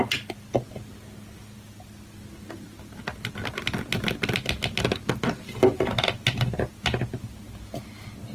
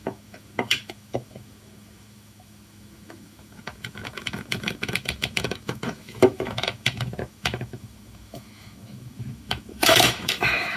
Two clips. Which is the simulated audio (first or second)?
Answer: second